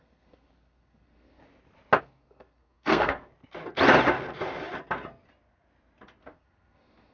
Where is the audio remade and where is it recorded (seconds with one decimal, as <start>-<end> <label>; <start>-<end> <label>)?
0.0-1.4 remade; 1.4-2.0 recorded; 2.0-3.3 remade; 3.3-6.2 recorded; 6.2-7.1 remade